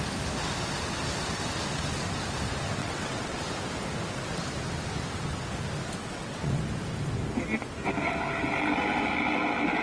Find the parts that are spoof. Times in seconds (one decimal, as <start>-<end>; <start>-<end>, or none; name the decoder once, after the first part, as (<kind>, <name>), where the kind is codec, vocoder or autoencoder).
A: 2.8-3.4 (vocoder, WaveNeXt); 6.0-6.6